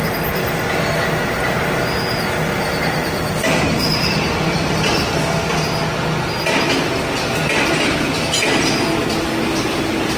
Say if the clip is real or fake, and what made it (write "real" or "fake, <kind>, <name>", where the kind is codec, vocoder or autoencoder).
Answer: real